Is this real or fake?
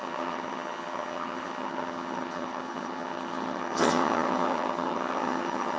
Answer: fake